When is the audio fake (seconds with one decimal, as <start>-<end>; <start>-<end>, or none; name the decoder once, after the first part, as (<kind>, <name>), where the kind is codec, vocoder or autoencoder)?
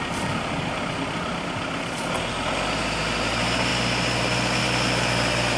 none